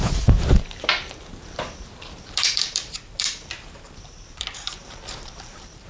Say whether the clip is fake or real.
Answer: fake